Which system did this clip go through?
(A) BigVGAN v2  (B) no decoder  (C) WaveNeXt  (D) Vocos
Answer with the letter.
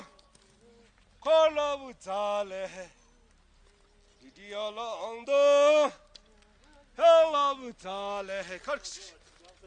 B